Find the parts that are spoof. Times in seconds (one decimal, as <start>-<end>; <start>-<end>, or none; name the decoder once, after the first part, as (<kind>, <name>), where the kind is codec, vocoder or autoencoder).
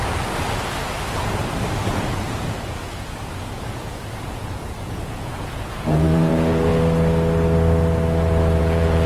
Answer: 1.9-6.7 (vocoder, Vocos); 8.6-9.1